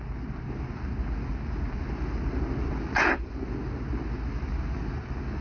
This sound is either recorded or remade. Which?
recorded